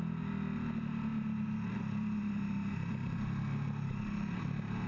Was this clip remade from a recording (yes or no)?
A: no